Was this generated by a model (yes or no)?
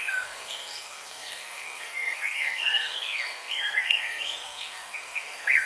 yes